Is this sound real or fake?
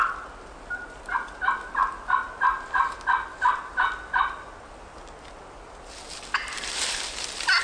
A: real